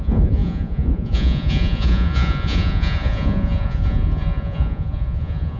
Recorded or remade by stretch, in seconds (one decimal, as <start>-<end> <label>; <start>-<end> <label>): 0.0-5.6 remade